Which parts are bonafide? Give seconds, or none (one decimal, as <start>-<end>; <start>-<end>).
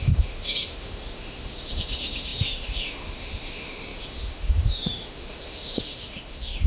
none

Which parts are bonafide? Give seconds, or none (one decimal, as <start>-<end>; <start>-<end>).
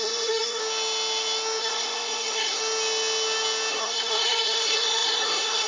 0.6-1.6; 2.6-3.7